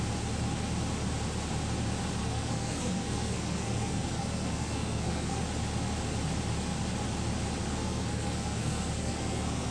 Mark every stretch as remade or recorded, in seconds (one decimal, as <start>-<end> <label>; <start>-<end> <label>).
0.0-2.2 recorded; 2.2-5.4 remade; 5.4-7.6 recorded; 7.6-9.7 remade

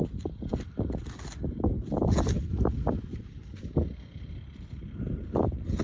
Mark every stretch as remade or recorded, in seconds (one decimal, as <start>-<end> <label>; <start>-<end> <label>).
0.0-5.8 recorded

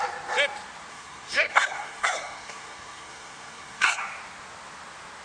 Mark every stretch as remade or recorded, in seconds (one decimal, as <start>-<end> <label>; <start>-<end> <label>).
0.0-0.9 recorded; 0.9-4.0 remade; 4.0-5.2 recorded

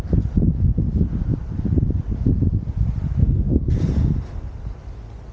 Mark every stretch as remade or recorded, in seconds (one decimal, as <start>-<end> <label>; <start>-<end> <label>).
0.0-3.2 recorded; 3.2-3.7 remade; 3.7-5.3 recorded